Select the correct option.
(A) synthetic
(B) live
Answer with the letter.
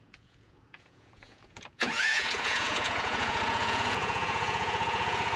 A